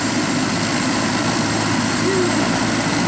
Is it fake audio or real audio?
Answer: real